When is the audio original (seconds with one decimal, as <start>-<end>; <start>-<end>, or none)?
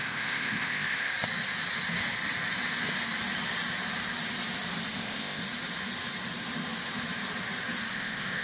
1.1-4.9; 5.4-7.9